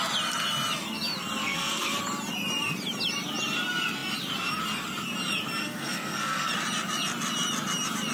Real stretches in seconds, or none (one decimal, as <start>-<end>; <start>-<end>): 0.0-1.4; 2.0-5.6; 6.5-8.1